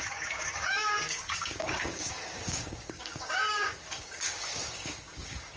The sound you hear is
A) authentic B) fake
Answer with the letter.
B